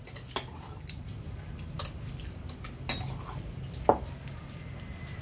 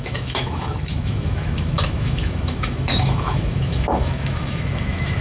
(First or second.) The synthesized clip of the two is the second